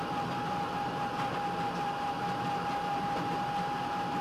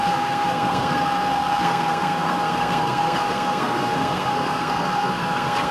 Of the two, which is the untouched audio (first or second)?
first